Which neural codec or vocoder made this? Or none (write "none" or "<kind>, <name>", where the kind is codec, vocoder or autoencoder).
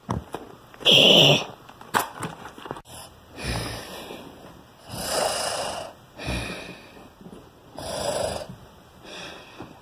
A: none